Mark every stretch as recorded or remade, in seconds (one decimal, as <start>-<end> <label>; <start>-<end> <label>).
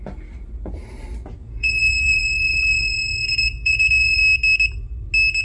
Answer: 0.0-1.4 recorded; 1.4-4.2 remade; 4.2-5.4 recorded